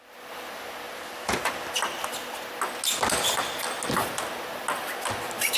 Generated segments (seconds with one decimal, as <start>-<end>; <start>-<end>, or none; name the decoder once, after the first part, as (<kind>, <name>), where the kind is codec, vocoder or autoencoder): none